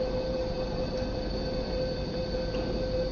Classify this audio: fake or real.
real